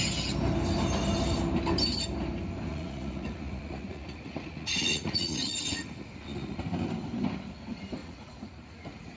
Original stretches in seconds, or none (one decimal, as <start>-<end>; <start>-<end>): 0.0-2.7; 6.6-8.0